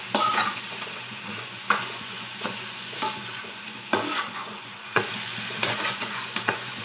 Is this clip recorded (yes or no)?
no